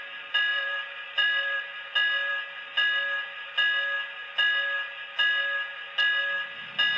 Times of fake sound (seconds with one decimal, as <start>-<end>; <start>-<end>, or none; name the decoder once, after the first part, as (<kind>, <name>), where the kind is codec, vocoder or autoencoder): 0.5-1.6 (vocoder, BigVGAN v2)

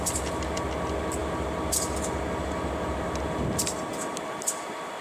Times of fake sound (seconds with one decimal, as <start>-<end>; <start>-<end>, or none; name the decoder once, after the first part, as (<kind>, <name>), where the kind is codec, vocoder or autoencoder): none